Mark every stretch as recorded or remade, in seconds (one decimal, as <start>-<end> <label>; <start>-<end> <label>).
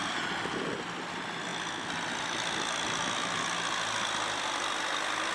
0.0-5.3 recorded